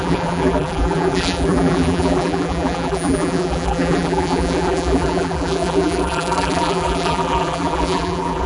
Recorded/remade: remade